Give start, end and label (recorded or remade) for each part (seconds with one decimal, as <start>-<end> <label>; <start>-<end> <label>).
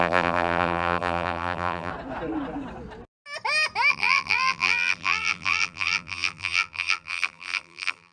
0.0-1.9 remade; 1.9-3.9 recorded; 3.9-8.1 remade